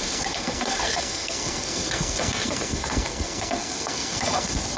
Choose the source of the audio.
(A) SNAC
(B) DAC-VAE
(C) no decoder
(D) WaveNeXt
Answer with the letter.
A